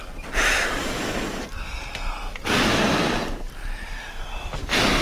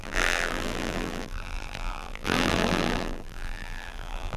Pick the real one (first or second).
first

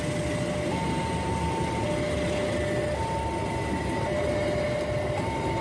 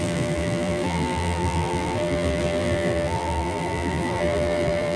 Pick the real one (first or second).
first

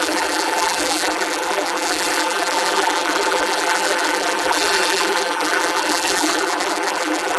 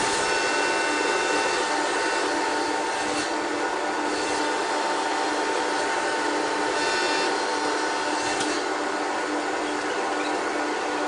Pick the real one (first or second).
second